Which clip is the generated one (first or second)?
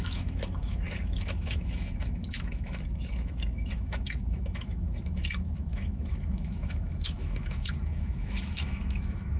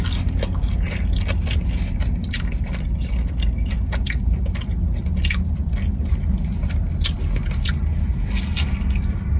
first